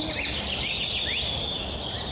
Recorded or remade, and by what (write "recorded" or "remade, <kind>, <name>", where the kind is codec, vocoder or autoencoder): recorded